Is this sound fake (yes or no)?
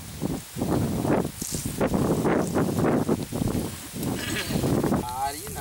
no